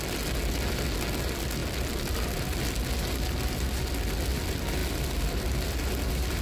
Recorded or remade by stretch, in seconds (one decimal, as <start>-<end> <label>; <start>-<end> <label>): 0.0-6.4 recorded